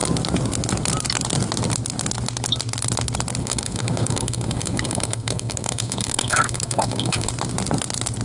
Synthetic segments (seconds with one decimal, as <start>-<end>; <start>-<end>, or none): 3.4-7.3